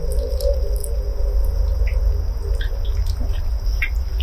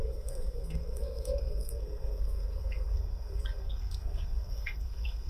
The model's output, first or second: second